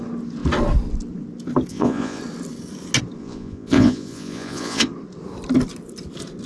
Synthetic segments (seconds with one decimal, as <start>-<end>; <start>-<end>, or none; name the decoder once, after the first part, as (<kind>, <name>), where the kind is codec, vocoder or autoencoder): 1.7-2.2 (vocoder, Vocos); 3.2-4.9